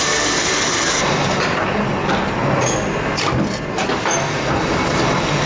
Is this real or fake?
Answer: real